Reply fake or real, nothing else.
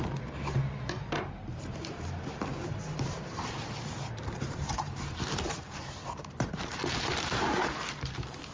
fake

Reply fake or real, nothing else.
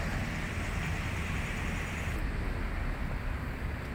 fake